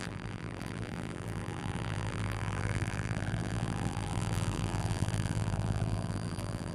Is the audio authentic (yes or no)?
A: no